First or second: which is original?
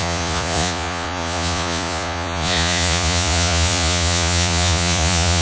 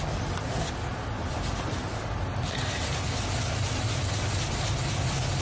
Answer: second